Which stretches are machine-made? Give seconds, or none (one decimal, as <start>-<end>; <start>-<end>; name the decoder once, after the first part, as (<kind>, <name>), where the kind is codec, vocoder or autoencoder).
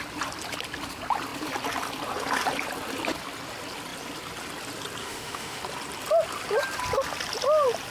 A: 5.0-5.6 (autoencoder, DAC-VAE)